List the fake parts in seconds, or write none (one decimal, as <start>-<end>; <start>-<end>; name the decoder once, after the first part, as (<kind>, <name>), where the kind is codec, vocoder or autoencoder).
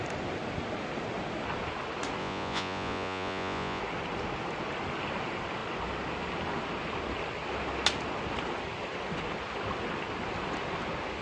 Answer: 2.2-3.8 (vocoder, Vocos)